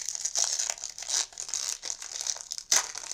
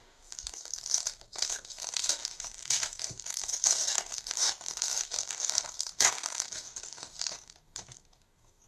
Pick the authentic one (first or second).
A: first